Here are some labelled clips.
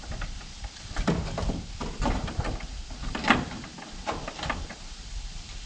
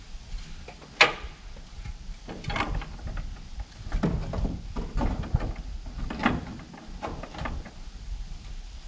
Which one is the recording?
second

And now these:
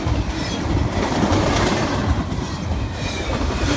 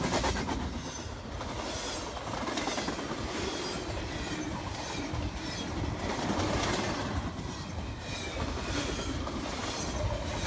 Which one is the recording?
second